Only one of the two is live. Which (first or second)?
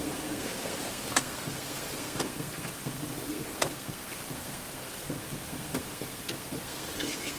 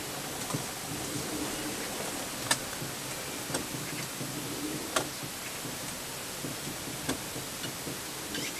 second